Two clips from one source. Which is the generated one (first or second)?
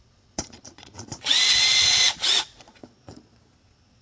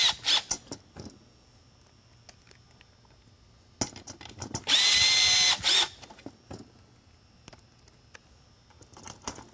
first